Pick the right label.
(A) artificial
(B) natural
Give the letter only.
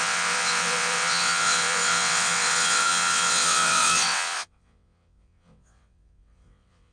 A